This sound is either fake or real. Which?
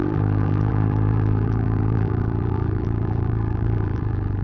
fake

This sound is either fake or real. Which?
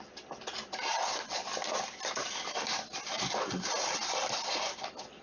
real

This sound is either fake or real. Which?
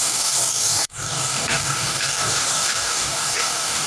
fake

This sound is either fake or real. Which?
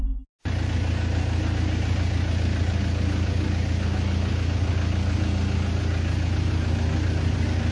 real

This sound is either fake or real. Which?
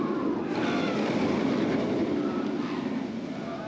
real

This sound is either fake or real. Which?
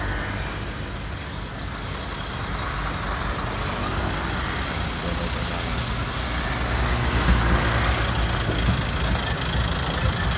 real